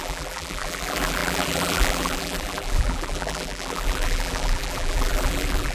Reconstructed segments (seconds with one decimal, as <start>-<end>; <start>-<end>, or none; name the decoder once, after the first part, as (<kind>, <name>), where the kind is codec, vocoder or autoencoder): 0.0-5.7 (vocoder, BigVGAN v2)